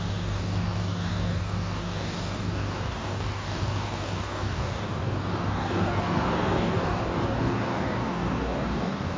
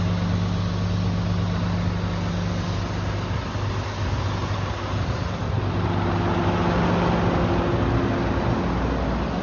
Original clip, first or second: second